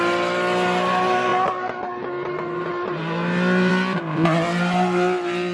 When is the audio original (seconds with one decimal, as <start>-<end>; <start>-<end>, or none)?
0.0-5.5